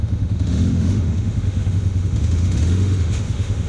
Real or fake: fake